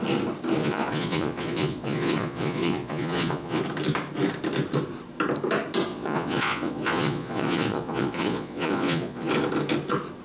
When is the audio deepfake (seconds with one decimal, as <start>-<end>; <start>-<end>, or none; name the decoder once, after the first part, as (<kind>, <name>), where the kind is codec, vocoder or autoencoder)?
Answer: 0.6-3.6 (vocoder, Vocos); 5.9-9.3